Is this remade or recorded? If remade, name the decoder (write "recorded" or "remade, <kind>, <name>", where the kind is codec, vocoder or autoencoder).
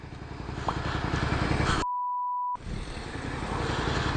recorded